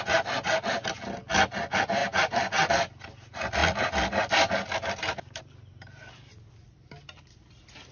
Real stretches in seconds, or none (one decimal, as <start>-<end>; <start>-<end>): 0.0-7.9

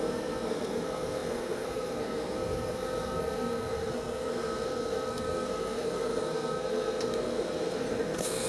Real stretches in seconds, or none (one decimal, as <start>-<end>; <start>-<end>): none

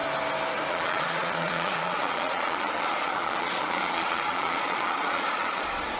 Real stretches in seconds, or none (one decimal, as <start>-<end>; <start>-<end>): 0.0-0.7

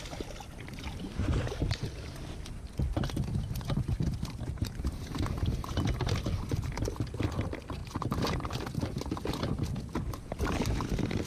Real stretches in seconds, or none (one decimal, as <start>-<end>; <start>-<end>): 0.0-3.3; 5.4-7.8; 9.6-11.3

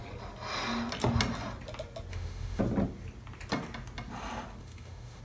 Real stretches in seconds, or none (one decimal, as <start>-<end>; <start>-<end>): 0.0-2.1; 2.6-4.6

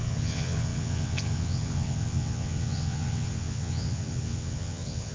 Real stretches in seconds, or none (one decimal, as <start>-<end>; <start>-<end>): none

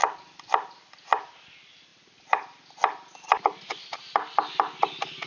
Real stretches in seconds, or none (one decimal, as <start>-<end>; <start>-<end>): 0.0-5.3

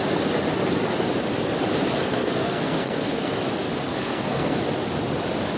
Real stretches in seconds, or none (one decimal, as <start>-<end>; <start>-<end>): 0.0-2.0; 3.4-3.9; 4.6-5.6